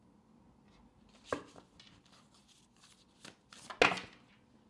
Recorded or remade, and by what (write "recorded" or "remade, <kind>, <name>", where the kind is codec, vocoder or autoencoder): recorded